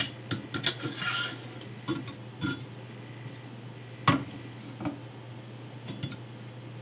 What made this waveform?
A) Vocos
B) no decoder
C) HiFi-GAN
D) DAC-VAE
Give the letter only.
B